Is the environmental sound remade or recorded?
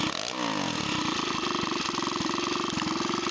recorded